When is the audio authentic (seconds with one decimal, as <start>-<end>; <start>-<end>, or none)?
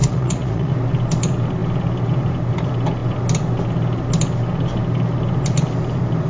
0.7-6.3